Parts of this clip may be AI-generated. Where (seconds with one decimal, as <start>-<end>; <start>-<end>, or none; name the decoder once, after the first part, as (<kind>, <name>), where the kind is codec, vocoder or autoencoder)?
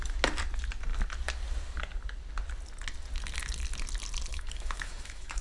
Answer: 4.3-5.4 (autoencoder, DAC-VAE)